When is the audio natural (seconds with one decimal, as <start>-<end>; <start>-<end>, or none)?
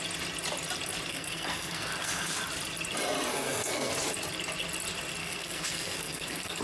0.0-1.1; 2.4-3.3; 3.9-5.2